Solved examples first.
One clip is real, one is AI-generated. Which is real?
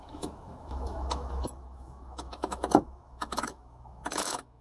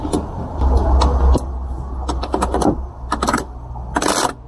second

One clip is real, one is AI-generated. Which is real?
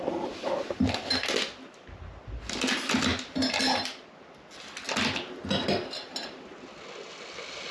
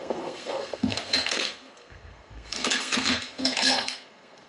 first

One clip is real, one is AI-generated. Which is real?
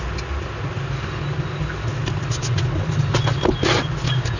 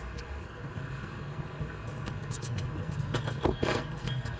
first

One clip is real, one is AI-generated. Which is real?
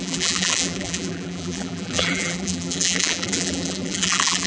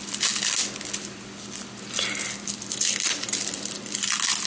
second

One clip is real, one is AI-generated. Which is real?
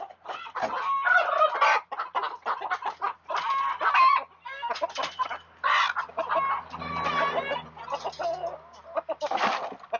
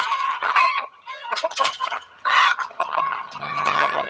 first